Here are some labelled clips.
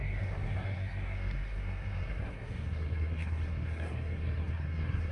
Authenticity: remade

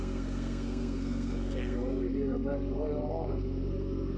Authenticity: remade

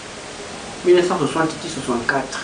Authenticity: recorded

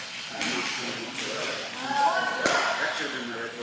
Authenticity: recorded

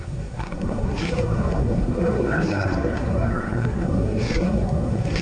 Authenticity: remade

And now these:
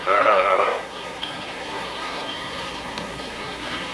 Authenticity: remade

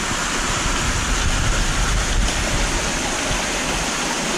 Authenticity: recorded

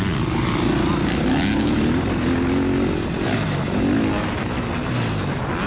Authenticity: recorded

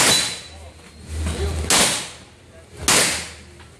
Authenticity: recorded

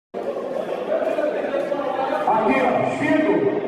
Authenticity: recorded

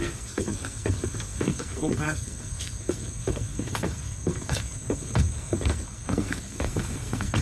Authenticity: remade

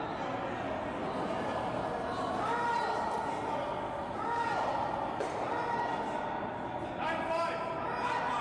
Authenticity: recorded